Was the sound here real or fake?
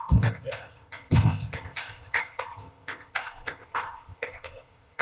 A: fake